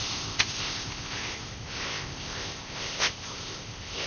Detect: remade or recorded remade